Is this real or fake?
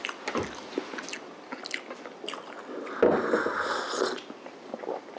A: real